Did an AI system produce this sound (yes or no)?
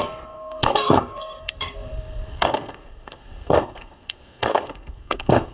yes